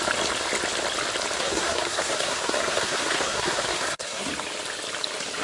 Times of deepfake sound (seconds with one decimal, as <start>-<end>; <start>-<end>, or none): 1.4-4.3